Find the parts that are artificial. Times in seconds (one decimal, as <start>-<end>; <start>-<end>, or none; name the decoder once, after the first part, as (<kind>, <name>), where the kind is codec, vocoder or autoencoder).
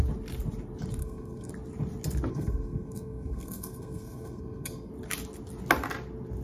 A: 1.0-1.5 (codec, SNAC); 2.3-4.9